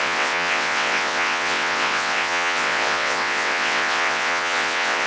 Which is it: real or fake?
fake